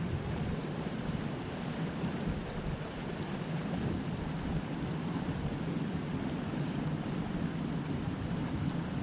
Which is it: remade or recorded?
remade